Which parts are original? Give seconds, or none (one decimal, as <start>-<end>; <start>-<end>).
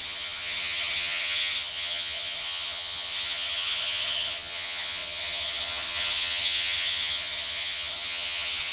none